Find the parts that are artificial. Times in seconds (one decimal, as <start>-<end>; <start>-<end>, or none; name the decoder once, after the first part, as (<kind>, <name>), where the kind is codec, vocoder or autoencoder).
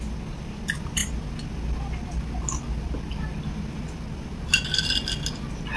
none